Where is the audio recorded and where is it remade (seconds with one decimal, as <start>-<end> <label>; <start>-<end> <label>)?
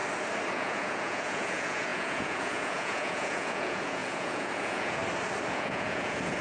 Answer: 0.0-0.5 recorded; 0.5-5.0 remade; 5.0-5.5 recorded; 5.5-6.4 remade